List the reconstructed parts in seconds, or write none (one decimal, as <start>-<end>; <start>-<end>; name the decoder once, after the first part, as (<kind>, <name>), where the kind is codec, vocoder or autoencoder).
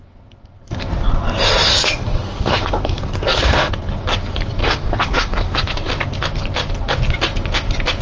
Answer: 1.7-3.7 (codec, SNAC); 4.6-5.9